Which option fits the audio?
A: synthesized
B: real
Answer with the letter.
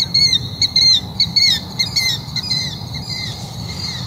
A